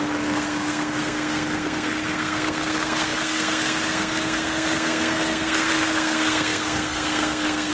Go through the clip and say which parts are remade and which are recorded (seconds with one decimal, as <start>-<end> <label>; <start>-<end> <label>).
0.0-7.7 remade